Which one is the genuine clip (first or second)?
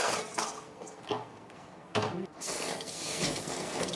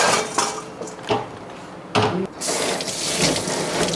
second